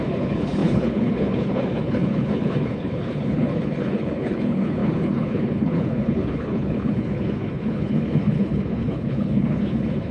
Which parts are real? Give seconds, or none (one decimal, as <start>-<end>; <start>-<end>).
none